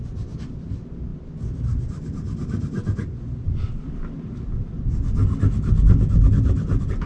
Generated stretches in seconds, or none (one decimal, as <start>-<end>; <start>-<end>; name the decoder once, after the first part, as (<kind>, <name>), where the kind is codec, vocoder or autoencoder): none